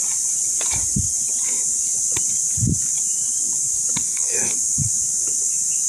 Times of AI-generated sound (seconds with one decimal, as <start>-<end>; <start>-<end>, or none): 4.0-4.5